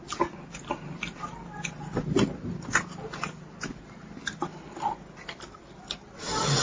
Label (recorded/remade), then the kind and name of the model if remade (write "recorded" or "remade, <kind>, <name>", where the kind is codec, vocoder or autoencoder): recorded